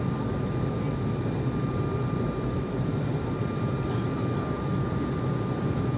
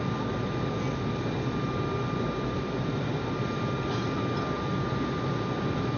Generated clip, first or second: first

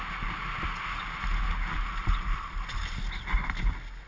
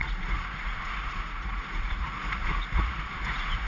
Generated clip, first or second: second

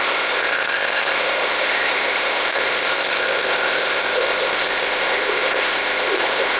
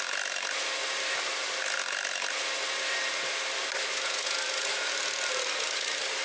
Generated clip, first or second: first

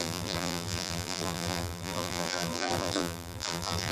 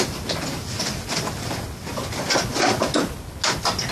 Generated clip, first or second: first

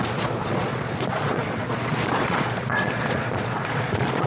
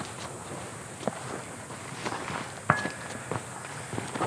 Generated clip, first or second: first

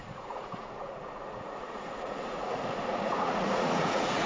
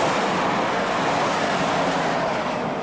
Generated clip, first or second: first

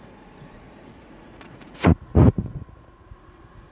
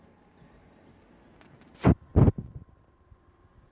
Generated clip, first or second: first